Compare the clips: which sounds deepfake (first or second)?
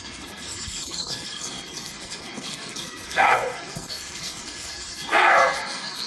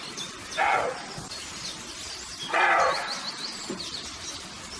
first